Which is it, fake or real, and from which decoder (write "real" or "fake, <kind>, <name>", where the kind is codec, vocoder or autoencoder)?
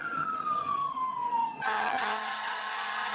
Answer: fake, vocoder, HiFi-GAN